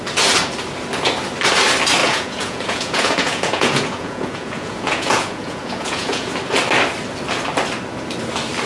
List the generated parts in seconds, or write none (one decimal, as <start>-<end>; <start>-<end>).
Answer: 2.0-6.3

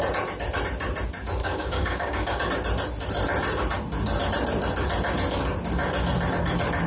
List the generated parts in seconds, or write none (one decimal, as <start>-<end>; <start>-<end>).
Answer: 1.4-2.5

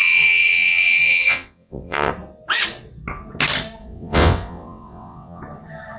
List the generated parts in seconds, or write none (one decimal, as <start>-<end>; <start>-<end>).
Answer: 0.0-2.1; 3.8-5.4

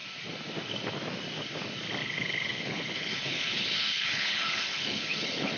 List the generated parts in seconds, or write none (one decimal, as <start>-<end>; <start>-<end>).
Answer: 2.0-5.6

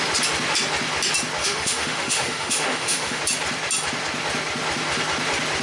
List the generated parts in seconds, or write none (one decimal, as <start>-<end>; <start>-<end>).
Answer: 1.4-3.2

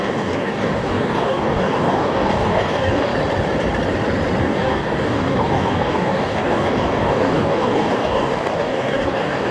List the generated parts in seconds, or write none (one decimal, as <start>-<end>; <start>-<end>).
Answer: 0.0-3.1; 4.4-9.5

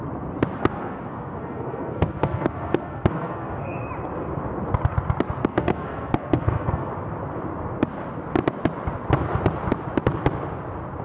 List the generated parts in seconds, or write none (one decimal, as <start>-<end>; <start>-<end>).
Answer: 0.6-3.8; 5.4-6.9